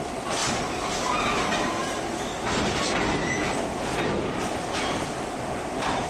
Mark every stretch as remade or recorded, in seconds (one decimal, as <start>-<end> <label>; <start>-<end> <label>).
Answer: 0.0-0.4 remade; 0.4-0.9 recorded; 0.9-6.1 remade